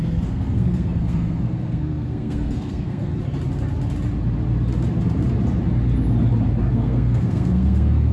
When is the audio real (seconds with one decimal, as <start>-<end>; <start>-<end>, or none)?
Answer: 3.1-6.7